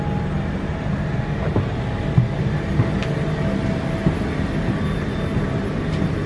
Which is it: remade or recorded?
recorded